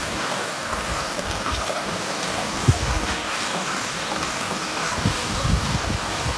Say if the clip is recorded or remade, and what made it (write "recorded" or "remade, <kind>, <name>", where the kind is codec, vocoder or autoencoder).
remade, codec, DAC